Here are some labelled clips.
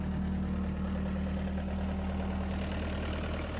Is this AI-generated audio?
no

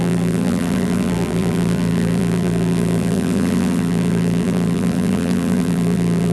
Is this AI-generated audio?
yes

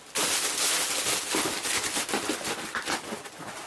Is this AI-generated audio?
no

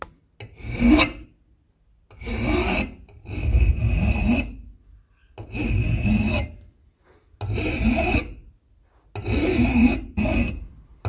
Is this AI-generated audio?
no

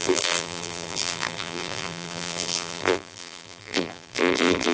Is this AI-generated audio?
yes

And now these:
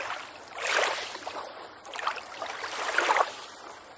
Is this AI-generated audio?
yes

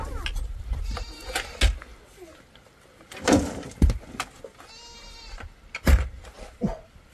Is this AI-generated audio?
no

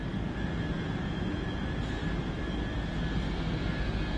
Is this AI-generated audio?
no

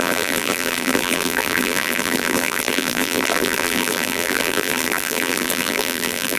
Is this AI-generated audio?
yes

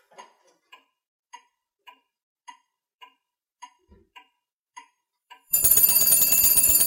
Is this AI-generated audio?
yes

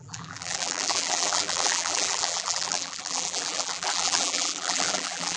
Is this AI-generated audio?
yes